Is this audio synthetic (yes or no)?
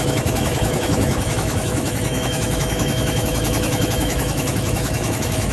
yes